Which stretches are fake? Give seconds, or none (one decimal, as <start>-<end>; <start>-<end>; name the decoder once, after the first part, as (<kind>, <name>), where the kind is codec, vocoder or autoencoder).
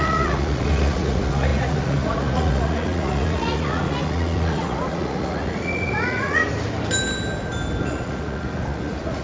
0.0-6.4 (vocoder, Vocos); 7.8-9.2